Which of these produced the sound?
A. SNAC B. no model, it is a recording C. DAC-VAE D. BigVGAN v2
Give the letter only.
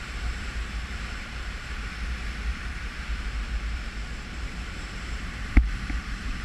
D